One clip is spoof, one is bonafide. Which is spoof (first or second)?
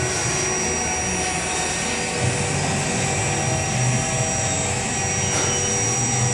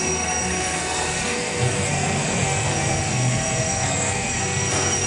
second